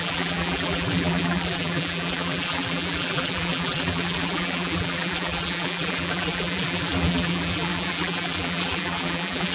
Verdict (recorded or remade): remade